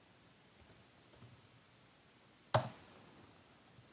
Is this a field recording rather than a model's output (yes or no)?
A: yes